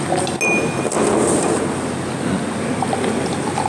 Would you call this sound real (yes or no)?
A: yes